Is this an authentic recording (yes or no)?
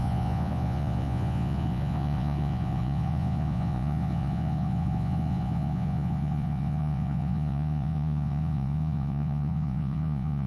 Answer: no